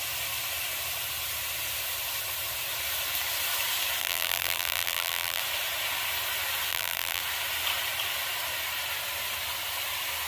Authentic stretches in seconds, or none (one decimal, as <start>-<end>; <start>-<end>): 0.0-4.0; 5.4-6.7; 7.2-10.3